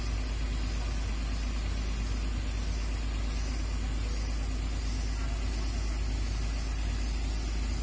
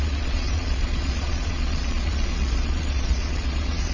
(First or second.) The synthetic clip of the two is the second